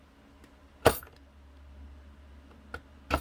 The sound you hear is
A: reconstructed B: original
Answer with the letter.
B